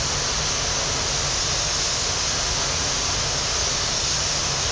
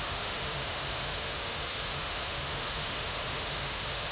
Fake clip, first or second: second